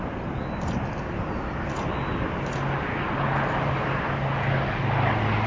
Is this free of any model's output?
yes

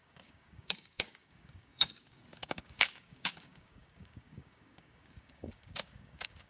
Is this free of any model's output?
no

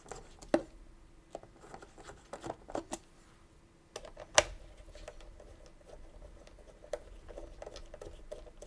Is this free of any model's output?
yes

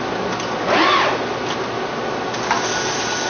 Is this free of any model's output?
yes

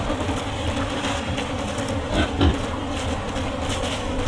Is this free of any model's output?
yes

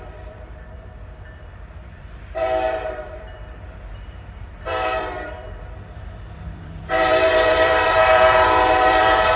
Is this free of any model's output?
no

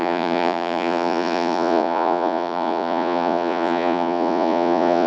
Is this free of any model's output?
no